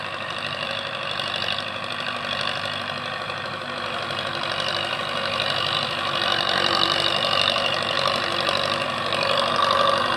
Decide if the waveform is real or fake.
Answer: fake